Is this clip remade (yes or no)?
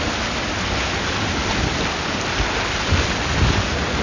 no